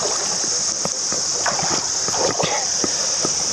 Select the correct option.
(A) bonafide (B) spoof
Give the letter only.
A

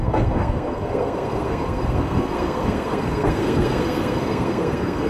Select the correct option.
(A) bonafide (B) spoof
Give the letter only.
B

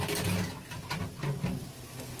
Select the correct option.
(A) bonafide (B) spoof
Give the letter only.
A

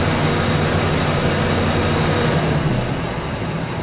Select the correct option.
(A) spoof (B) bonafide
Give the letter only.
B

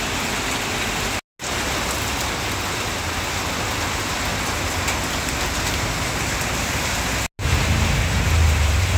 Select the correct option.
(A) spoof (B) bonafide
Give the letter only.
B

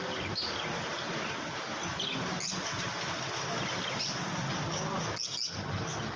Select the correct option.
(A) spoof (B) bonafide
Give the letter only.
B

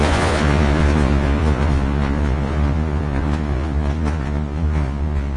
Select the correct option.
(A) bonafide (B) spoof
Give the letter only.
B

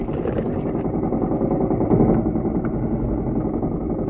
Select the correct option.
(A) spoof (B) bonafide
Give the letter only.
B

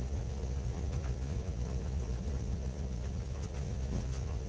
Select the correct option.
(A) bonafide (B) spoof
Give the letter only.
B